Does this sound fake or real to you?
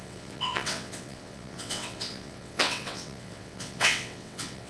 fake